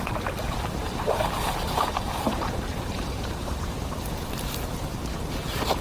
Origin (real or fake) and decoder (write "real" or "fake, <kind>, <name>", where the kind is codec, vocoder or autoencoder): fake, vocoder, BigVGAN v2